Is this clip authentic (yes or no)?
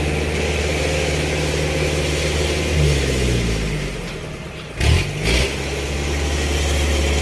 yes